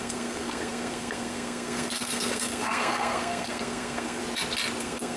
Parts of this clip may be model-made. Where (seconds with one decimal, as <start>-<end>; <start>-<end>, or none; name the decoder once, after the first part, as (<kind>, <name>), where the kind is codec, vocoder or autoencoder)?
0.0-4.2 (codec, SNAC); 4.8-5.2